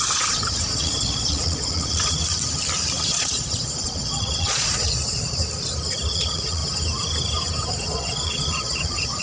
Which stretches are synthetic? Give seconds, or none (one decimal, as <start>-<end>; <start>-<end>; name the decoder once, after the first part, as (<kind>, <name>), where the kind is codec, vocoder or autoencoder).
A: 0.0-2.2 (vocoder, Vocos); 3.1-5.4; 6.1-6.6; 7.7-9.2